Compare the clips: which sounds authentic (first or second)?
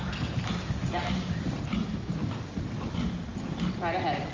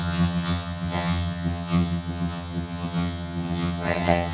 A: first